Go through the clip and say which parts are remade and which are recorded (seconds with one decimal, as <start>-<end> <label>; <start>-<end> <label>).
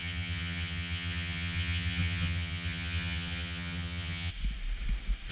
0.0-4.3 remade; 4.3-5.3 recorded